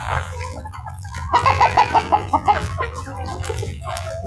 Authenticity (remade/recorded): remade